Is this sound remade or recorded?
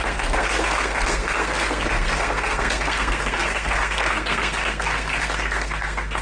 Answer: remade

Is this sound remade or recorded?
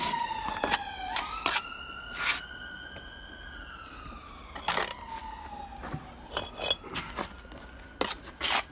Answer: recorded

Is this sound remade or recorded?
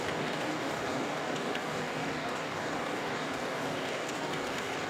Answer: remade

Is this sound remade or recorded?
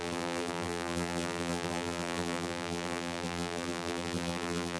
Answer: remade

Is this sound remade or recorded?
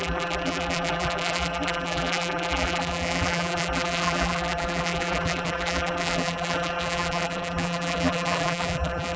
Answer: remade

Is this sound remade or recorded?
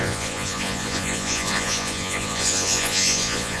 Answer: remade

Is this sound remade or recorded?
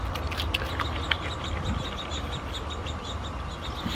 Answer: recorded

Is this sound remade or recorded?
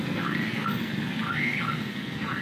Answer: remade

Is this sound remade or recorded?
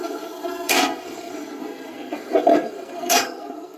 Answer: remade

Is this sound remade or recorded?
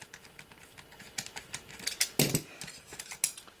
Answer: recorded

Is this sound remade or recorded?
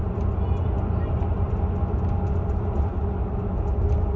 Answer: recorded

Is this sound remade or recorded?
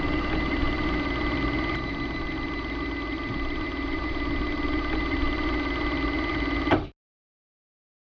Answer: recorded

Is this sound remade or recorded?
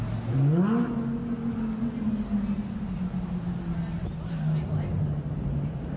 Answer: recorded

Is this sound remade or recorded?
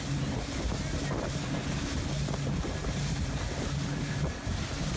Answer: recorded